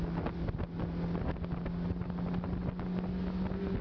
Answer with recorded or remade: recorded